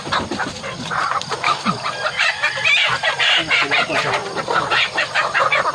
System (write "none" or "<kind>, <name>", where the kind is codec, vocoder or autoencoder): none